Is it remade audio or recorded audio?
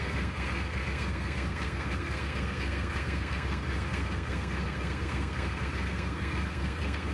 remade